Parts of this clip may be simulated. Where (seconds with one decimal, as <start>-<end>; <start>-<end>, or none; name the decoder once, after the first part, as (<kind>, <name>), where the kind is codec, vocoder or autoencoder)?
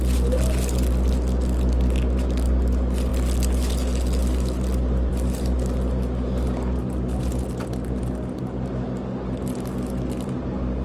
none